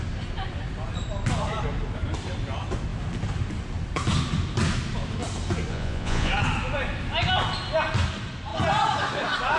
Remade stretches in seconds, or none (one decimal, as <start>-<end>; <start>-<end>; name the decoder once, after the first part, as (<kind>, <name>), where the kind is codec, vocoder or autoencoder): 5.7-6.3 (vocoder, Vocos)